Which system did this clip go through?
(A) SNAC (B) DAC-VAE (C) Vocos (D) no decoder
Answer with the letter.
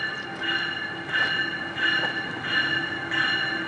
D